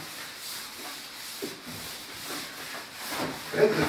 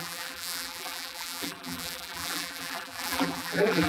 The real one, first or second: first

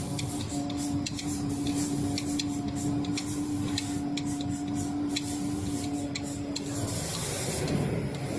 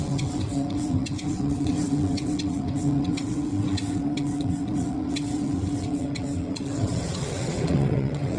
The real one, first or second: first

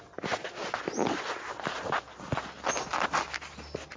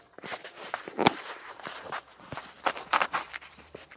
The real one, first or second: first